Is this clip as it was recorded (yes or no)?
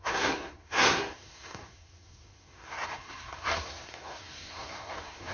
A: no